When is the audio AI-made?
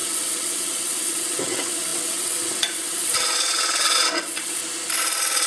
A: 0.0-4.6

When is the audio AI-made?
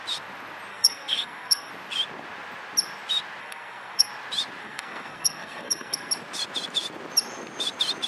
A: 0.7-1.7; 3.4-4.1; 4.6-6.1